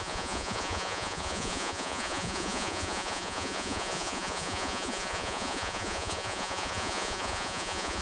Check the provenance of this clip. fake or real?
fake